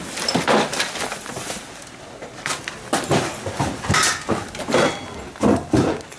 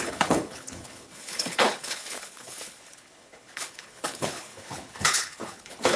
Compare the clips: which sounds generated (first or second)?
second